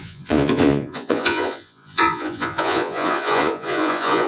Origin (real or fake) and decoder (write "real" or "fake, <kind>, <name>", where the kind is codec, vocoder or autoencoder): fake, vocoder, Vocos